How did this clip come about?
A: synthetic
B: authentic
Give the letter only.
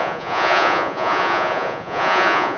A